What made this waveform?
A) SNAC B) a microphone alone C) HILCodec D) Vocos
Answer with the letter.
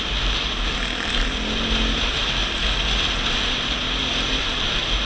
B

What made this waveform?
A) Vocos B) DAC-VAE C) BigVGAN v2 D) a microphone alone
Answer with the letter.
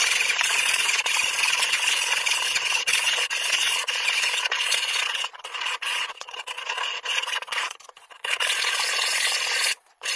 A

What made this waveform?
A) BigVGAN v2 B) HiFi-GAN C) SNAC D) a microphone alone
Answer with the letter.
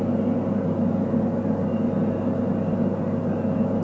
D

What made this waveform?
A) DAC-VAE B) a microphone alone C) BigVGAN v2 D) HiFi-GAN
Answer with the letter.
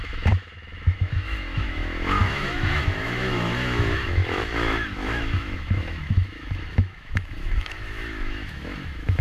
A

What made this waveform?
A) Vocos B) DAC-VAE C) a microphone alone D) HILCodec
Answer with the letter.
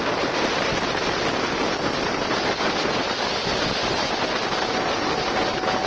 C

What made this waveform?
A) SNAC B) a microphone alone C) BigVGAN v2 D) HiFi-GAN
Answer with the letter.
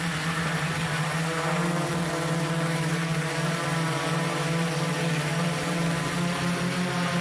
C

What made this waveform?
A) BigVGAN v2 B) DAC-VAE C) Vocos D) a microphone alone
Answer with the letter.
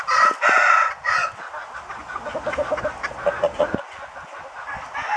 D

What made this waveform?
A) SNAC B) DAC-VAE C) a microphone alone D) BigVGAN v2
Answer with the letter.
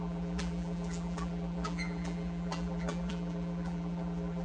D